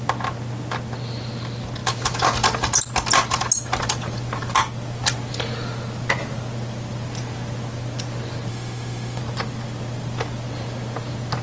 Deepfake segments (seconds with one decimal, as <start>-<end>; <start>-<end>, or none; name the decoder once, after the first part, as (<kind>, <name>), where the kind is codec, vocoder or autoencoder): 8.5-9.2 (autoencoder, DAC-VAE)